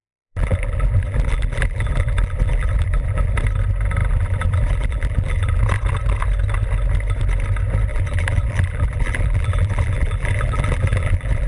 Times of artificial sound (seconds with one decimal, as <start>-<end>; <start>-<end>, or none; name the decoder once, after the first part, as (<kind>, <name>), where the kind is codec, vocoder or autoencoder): 0.0-3.3 (vocoder, BigVGAN v2); 4.0-5.6; 7.9-11.5